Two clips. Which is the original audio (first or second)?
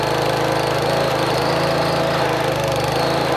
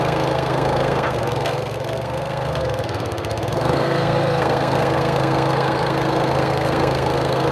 first